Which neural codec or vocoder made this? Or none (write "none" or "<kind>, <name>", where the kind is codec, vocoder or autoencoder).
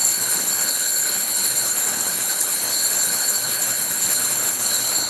codec, HILCodec